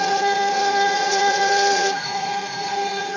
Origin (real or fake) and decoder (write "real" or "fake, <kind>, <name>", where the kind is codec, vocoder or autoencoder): fake, vocoder, Vocos